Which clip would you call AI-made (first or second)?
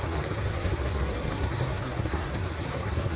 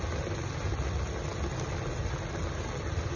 first